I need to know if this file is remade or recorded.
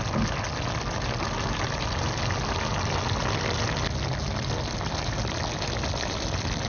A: recorded